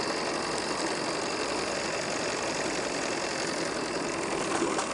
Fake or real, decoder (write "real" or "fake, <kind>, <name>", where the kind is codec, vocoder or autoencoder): real